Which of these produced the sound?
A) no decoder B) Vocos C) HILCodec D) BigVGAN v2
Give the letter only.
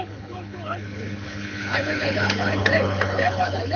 C